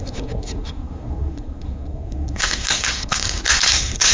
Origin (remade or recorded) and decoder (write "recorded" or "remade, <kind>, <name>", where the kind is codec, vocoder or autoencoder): remade, codec, SNAC